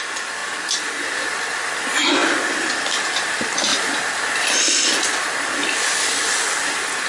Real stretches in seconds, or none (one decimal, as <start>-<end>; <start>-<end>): 0.0-7.1